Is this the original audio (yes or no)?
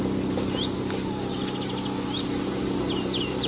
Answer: yes